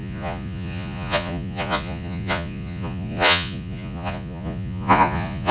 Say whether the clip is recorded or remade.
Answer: remade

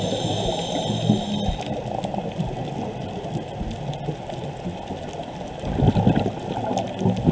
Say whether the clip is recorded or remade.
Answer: recorded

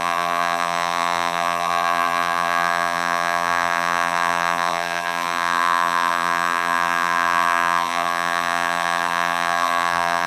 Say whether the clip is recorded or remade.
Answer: remade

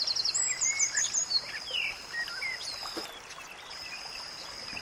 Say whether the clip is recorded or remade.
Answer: remade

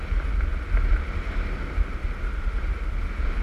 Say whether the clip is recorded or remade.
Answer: recorded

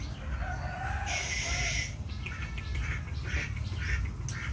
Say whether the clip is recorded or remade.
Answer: recorded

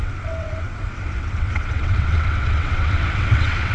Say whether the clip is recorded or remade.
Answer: remade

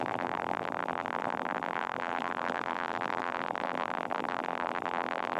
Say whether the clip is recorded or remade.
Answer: remade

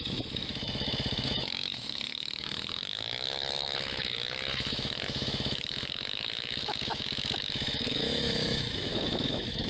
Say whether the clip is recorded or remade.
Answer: remade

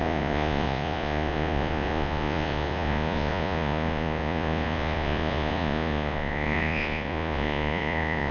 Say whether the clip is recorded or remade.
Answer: remade